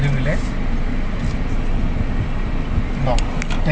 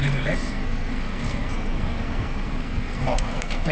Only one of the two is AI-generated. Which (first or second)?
second